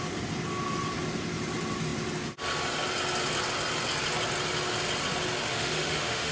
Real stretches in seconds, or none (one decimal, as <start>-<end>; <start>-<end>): 0.0-5.5